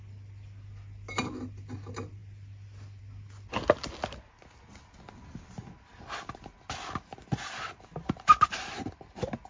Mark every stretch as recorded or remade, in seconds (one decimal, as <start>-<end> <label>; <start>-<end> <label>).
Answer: 0.0-9.5 recorded